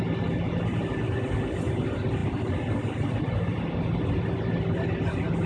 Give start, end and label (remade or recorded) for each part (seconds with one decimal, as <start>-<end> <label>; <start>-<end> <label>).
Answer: 0.0-5.5 recorded